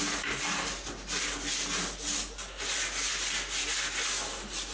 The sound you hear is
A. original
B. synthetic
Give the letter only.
A